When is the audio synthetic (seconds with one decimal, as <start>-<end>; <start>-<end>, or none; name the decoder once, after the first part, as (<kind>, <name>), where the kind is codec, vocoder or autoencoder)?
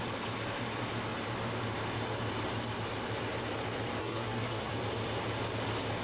4.0-4.7 (codec, SNAC)